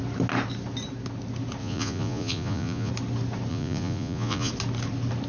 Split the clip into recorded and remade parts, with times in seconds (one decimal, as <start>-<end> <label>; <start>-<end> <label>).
0.0-1.6 recorded; 1.6-2.9 remade; 2.9-3.5 recorded; 3.5-4.5 remade; 4.5-5.3 recorded